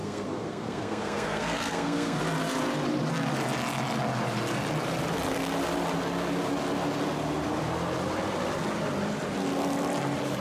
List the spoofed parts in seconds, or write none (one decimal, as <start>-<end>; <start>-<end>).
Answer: 0.0-2.2